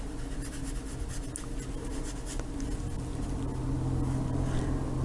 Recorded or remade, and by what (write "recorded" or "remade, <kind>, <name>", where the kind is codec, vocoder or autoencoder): recorded